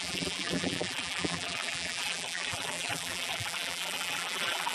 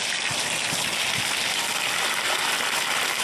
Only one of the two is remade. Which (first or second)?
first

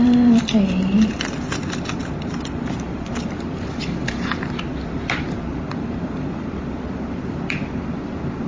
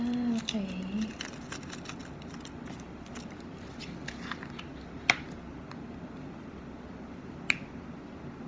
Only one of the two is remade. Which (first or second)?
first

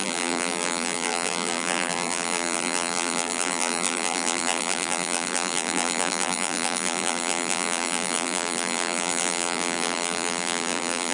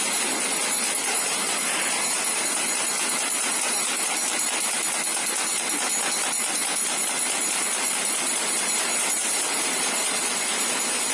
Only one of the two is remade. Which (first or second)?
first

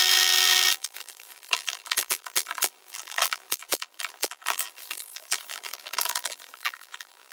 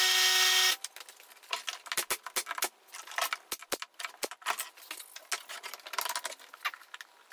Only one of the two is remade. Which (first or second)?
first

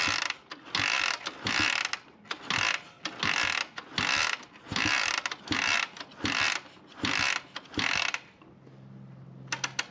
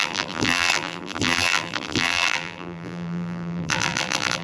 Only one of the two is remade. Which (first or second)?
second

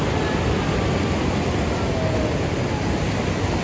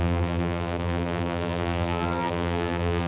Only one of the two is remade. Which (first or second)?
second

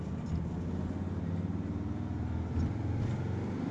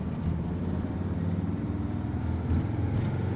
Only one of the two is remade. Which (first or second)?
second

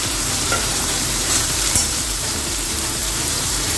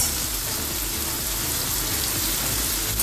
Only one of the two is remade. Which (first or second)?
first